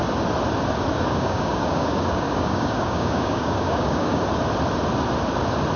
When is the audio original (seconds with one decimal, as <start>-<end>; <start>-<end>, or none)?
0.0-0.9; 4.2-5.8

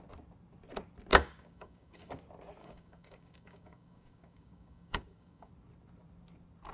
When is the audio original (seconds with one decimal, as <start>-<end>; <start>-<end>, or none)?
0.0-1.1; 2.1-2.6; 5.5-6.7

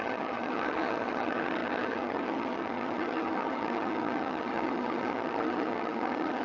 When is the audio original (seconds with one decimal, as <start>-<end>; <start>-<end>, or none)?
none

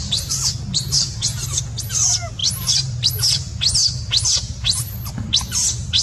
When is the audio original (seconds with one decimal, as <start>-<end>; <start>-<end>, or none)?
0.6-2.4; 3.1-6.0

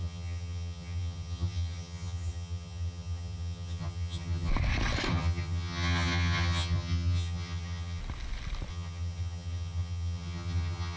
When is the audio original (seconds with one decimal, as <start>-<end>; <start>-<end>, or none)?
4.5-5.1; 8.0-8.7

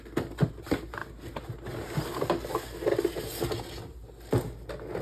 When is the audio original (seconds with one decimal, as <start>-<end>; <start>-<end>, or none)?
0.0-5.0